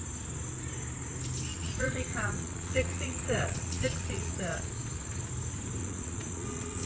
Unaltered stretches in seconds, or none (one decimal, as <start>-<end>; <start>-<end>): 0.0-1.5; 5.3-5.8